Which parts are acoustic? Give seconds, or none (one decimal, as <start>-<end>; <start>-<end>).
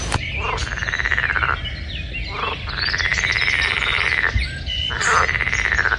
0.0-6.0